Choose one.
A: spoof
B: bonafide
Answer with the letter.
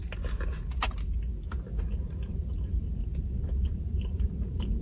B